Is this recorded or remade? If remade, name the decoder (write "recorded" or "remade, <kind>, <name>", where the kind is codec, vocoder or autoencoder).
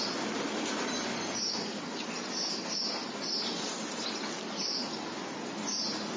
recorded